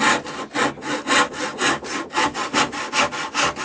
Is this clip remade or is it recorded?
recorded